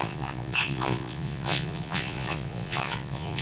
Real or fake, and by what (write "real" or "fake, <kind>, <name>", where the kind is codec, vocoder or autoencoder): fake, vocoder, Vocos